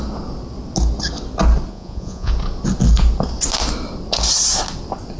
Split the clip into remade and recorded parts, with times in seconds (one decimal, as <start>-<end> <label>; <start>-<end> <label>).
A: 0.0-1.7 recorded; 1.7-2.3 remade; 2.3-5.2 recorded